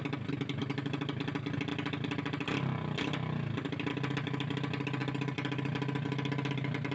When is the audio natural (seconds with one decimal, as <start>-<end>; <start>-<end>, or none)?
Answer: 0.0-6.9